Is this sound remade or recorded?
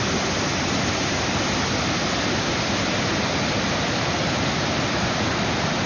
recorded